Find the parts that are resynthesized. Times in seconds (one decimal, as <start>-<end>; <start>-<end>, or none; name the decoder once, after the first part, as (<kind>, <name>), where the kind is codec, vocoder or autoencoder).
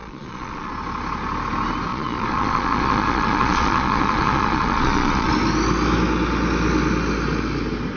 0.0-0.7 (vocoder, Vocos); 1.9-5.3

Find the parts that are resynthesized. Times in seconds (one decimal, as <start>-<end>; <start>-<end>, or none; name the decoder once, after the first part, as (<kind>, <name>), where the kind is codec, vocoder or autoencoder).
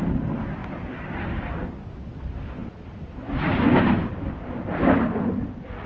none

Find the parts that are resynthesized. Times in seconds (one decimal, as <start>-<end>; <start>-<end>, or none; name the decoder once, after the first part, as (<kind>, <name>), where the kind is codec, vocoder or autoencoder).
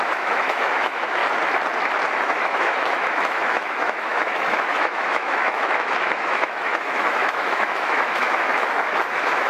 0.0-1.2 (autoencoder, DAC-VAE); 2.2-9.5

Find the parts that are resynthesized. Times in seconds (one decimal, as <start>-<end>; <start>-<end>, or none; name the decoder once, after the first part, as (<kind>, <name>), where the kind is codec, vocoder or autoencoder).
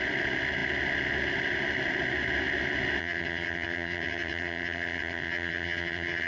3.0-6.3 (vocoder, HiFi-GAN)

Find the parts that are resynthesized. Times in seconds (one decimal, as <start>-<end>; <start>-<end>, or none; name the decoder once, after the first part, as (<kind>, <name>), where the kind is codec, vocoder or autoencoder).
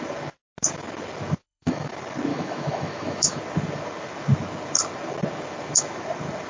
1.4-1.9 (autoencoder, DAC-VAE); 2.3-3.4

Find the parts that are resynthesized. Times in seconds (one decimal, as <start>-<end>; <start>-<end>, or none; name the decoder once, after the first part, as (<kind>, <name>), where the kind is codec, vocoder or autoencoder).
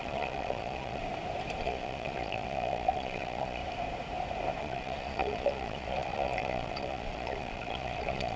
0.0-1.0 (vocoder, Vocos); 1.6-3.6; 4.6-8.4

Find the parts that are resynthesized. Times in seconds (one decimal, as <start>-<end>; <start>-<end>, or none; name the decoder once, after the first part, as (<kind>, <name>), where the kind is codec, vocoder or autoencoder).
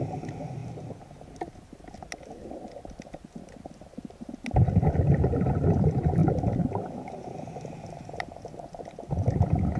none